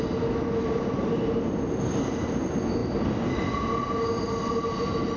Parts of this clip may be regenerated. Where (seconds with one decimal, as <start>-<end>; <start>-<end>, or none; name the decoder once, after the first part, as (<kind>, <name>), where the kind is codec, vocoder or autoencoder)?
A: none